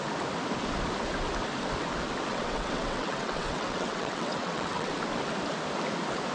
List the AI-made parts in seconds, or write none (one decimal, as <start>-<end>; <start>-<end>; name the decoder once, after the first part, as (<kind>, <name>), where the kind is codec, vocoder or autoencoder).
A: 2.3-4.9 (vocoder, WaveNeXt)